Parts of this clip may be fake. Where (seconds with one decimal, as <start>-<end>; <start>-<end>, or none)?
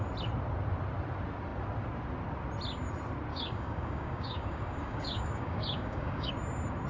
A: 3.3-6.3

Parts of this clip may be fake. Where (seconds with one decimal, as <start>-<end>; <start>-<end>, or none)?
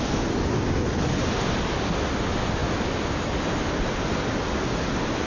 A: none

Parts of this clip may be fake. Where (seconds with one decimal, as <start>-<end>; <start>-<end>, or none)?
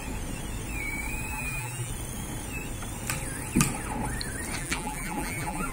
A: 1.3-1.9; 4.6-5.7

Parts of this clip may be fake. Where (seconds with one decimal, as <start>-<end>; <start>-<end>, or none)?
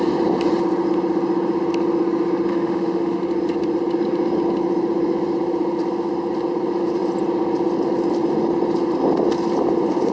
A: 2.5-3.2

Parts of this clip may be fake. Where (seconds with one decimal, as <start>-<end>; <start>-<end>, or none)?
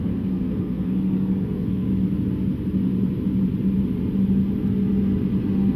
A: 0.0-1.9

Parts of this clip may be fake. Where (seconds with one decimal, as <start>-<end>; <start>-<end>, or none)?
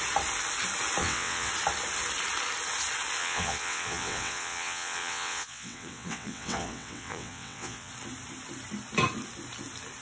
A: 1.0-1.5; 3.2-7.9